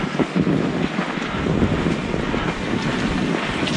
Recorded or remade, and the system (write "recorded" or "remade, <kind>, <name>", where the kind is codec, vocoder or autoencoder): recorded